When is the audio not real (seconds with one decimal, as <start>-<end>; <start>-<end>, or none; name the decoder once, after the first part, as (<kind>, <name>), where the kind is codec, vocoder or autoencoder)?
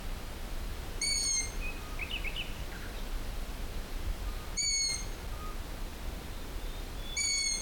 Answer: none